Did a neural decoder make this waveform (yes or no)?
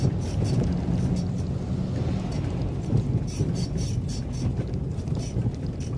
no